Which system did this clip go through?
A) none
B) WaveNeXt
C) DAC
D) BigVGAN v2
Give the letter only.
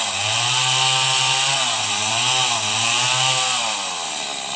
A